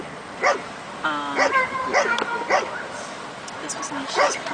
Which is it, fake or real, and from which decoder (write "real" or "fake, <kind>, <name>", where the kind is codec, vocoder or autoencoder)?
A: real